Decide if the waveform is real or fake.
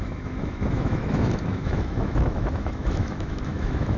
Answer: fake